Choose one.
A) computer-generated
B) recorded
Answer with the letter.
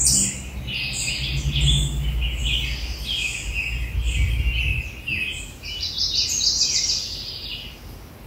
B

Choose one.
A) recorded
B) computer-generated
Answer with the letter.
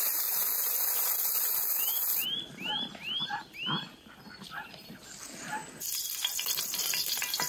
A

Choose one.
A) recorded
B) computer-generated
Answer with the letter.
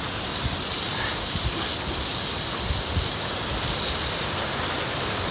A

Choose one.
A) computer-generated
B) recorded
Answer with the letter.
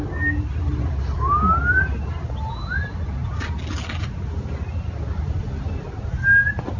B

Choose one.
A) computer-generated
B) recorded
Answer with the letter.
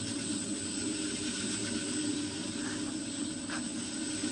B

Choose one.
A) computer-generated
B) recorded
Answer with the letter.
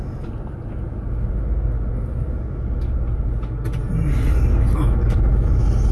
B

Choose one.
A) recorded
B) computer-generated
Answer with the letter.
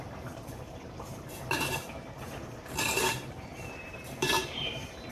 B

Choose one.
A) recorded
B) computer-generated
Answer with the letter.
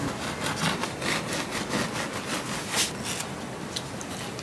A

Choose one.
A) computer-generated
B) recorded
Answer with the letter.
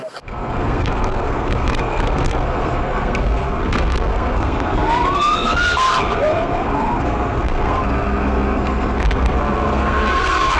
A